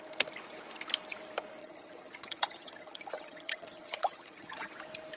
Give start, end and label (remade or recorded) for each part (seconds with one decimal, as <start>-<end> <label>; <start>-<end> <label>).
0.0-1.6 recorded; 1.6-4.7 remade; 4.7-5.2 recorded